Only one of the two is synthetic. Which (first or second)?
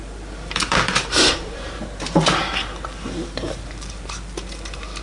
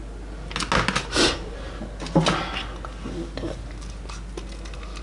first